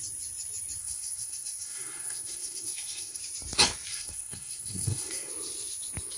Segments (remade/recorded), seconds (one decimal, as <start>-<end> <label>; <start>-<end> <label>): 0.0-0.8 recorded; 0.8-3.2 remade; 3.2-3.9 recorded; 3.9-5.3 remade; 5.3-6.2 recorded